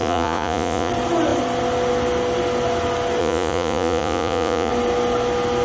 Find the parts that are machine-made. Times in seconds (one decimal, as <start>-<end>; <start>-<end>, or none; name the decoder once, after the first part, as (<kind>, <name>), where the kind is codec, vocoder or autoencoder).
0.0-0.9 (vocoder, Vocos); 3.2-4.7